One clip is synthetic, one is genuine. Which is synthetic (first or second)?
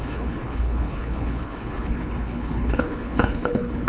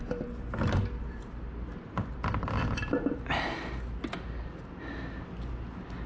first